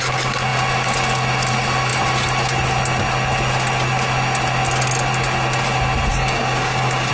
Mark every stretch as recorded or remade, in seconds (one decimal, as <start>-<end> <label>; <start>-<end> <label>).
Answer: 0.0-6.1 recorded; 6.1-7.1 remade